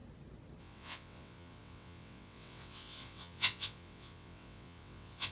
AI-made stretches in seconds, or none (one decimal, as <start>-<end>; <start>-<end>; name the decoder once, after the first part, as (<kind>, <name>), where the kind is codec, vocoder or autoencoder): 0.6-5.3 (vocoder, WaveNeXt)